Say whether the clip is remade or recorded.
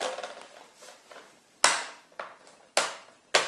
recorded